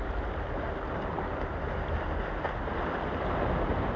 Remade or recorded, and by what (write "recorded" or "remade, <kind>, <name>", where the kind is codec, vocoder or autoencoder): recorded